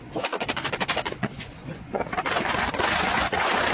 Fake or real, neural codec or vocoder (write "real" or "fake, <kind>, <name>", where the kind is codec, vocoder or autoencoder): fake, vocoder, Vocos